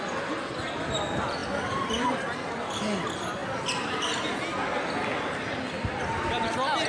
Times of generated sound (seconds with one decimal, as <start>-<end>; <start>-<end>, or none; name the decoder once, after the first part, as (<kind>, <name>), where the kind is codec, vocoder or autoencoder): none